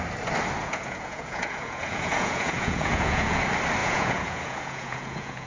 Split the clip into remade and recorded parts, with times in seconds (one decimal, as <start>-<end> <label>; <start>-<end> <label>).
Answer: 0.0-0.6 recorded; 0.6-3.4 remade; 3.4-3.8 recorded; 3.8-5.5 remade